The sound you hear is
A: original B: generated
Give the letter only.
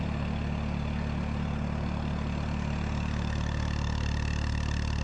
A